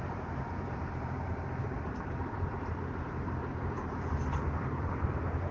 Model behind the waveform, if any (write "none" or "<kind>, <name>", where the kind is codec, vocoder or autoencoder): vocoder, BigVGAN v2